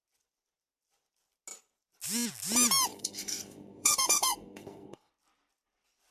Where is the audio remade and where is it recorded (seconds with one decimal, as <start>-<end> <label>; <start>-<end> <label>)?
0.0-2.9 recorded; 2.9-5.1 remade; 5.1-6.1 recorded